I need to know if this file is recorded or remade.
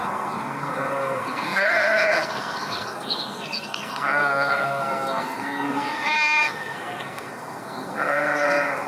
remade